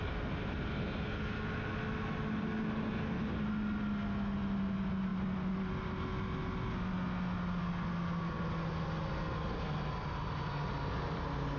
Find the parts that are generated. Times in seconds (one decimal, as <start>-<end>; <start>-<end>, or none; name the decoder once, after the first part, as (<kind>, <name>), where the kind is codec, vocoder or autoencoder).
none